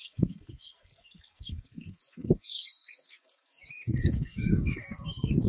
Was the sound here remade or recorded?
remade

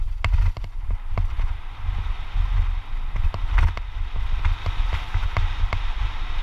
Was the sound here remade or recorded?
recorded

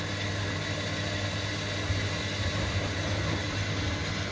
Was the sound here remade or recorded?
recorded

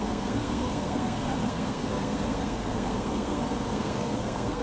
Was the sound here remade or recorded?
remade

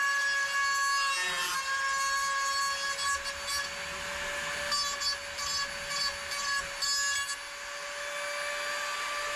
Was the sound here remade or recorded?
recorded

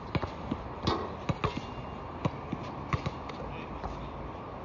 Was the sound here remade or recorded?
recorded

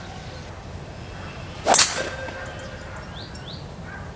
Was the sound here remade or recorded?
recorded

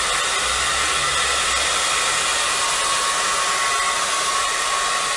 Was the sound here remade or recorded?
recorded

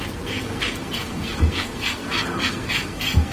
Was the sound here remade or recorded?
remade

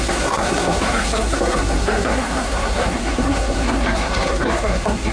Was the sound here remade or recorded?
remade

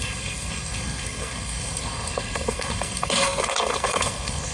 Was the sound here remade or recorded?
remade